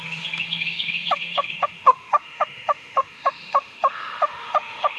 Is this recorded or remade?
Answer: remade